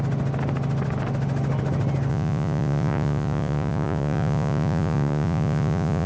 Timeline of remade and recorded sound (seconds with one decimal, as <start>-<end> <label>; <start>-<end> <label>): 0.0-2.1 recorded; 2.1-6.1 remade